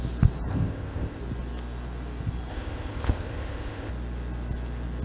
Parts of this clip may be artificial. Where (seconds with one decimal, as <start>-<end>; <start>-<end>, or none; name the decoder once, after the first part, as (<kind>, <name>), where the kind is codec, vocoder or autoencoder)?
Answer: 0.5-1.2 (codec, ZipCodec); 2.5-3.9

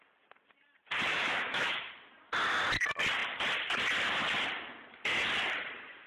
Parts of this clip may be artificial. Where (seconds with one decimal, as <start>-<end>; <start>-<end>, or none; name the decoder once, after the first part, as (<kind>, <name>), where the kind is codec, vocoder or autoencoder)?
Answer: 1.1-1.8 (autoencoder, DAC-VAE)

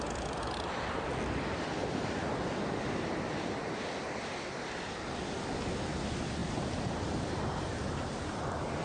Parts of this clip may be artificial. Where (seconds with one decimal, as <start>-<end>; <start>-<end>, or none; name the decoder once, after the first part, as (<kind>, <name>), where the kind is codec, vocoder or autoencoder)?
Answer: 6.4-8.8 (vocoder, BigVGAN v2)

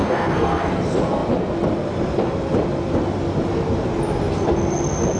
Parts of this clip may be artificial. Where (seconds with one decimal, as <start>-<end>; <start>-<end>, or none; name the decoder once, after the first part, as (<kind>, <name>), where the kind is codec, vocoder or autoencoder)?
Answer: 0.0-0.7 (codec, SNAC)